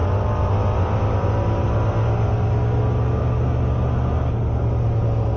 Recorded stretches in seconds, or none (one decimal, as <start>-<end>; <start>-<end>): 0.0-5.4